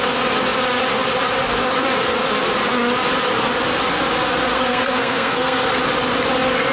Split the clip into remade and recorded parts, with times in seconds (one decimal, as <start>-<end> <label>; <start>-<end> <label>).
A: 0.0-4.5 recorded; 4.5-5.8 remade; 5.8-6.7 recorded